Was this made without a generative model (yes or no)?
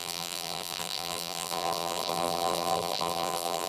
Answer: no